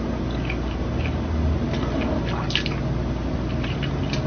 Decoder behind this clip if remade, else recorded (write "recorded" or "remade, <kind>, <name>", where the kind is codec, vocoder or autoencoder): recorded